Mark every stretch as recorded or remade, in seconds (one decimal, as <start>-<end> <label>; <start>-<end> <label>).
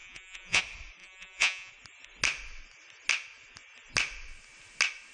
0.0-0.6 remade; 0.6-1.0 recorded; 1.0-1.7 remade; 1.7-5.1 recorded